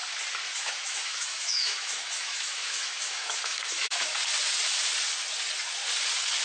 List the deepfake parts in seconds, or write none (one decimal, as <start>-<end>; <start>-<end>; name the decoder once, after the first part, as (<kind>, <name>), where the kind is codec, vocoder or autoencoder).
0.5-4.2 (autoencoder, DAC-VAE)